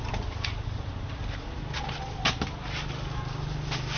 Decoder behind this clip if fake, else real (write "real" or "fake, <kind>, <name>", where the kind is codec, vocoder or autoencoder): real